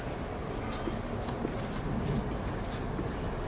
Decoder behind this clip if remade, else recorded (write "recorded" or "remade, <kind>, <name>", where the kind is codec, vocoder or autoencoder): recorded